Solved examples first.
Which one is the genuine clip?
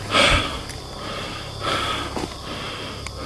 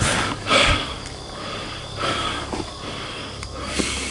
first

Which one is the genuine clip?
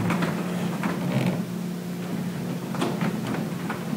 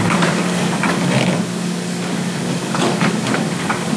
first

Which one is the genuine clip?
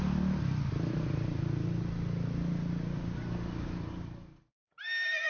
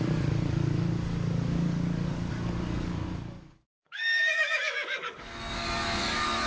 first